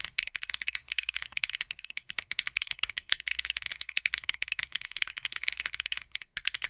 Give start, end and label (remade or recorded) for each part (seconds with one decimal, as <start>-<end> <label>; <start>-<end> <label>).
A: 0.0-6.7 remade